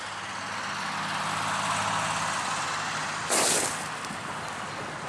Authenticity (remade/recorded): recorded